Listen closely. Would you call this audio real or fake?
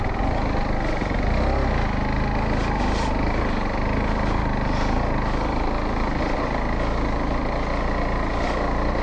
real